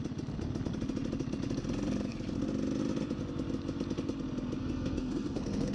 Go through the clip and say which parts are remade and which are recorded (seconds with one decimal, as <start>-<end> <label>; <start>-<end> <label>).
0.0-4.6 recorded; 4.6-5.7 remade